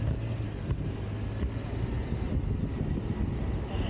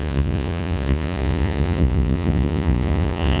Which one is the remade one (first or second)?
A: second